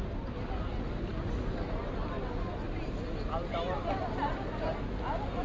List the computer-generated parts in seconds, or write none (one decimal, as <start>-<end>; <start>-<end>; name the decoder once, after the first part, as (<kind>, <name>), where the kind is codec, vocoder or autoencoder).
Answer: none